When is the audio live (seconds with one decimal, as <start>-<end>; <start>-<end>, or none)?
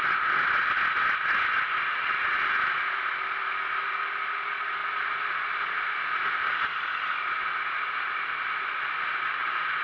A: 0.0-9.8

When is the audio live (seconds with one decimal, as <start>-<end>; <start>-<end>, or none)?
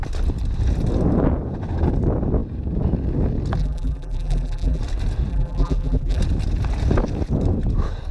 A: 0.0-3.6; 4.8-5.3; 6.2-8.1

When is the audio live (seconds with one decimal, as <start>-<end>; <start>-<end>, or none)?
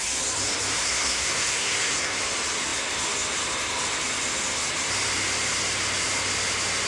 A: 0.0-0.8; 2.2-6.9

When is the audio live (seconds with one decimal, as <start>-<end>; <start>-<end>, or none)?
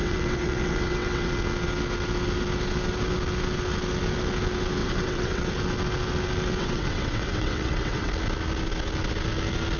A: 1.3-4.8; 5.4-6.6; 8.1-9.8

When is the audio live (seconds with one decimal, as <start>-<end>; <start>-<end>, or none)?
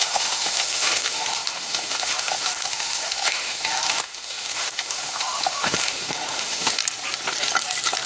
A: 6.8-8.1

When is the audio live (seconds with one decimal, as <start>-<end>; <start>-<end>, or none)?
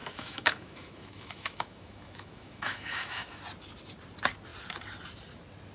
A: 3.4-5.7